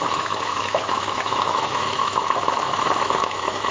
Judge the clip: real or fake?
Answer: fake